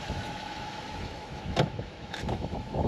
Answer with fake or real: fake